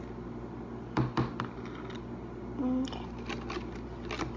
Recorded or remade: recorded